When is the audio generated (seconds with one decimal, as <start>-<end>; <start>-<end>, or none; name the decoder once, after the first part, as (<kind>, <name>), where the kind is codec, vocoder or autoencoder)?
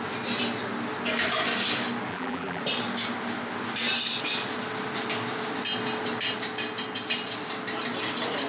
2.1-2.6 (vocoder, BigVGAN v2)